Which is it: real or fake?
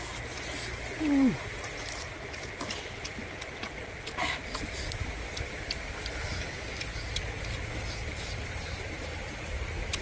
real